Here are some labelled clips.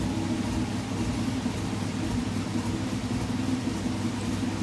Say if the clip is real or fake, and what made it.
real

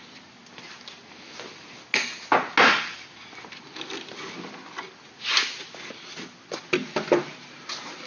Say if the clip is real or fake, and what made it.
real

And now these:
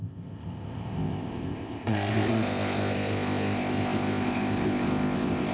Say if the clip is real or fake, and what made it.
fake, codec, ZipCodec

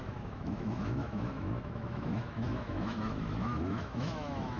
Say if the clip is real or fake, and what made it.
fake, autoencoder, DAC-VAE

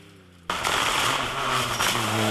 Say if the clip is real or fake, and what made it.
real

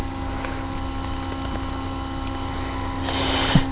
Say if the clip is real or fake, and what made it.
real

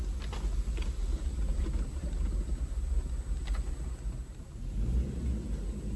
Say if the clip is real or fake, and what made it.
real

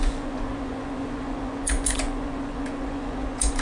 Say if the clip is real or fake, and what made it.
fake, vocoder, Vocos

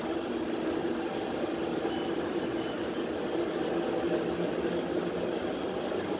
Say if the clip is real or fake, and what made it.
real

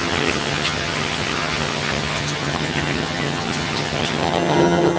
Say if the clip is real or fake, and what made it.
fake, vocoder, HiFi-GAN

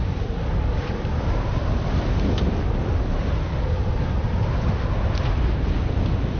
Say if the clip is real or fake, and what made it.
real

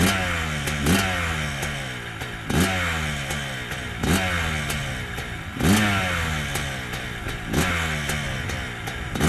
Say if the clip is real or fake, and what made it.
real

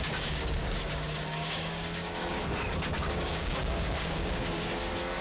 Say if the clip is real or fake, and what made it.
fake, codec, DAC